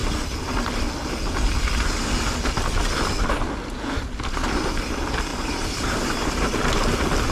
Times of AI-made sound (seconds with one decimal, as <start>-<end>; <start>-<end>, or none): 5.3-6.6